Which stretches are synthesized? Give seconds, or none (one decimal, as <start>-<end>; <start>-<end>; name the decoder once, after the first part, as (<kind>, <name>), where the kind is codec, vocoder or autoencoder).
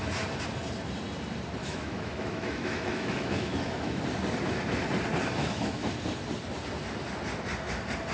1.6-4.0 (autoencoder, DAC-VAE); 5.4-5.9